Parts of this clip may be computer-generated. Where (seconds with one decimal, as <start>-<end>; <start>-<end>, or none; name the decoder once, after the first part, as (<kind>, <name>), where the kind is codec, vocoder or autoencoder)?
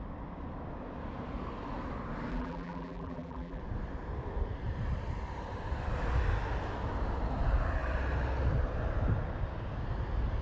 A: 2.3-3.6 (vocoder, BigVGAN v2)